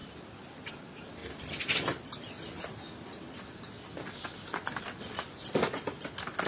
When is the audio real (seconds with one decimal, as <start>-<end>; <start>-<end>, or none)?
0.0-6.5